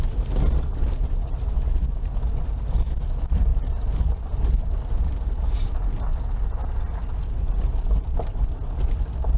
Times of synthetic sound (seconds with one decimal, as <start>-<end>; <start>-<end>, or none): none